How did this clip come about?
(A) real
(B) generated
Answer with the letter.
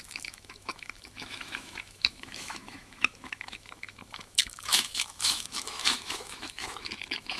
B